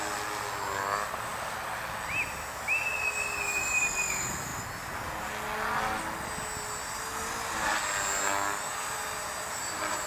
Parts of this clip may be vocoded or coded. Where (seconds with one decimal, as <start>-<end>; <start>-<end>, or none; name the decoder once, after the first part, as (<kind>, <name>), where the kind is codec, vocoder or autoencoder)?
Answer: none